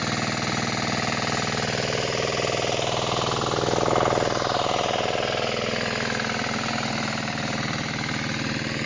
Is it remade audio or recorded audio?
recorded